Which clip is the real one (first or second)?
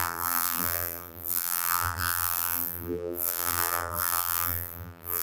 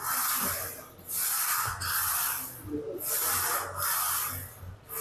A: second